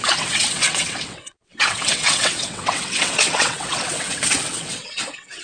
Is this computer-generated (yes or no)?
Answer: yes